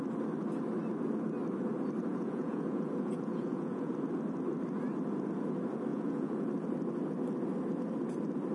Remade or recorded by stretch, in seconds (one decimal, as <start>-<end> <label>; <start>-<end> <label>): 0.0-2.1 recorded; 2.1-3.9 remade; 3.9-5.9 recorded; 5.9-6.5 remade; 6.5-8.5 recorded